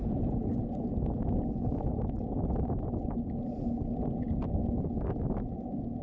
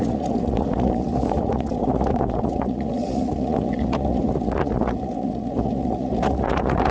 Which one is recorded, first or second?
first